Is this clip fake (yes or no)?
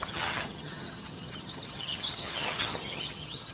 yes